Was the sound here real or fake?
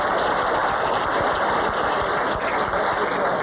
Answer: real